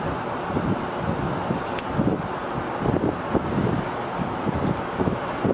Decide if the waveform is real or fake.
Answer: real